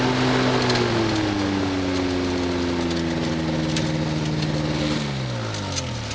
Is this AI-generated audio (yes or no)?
no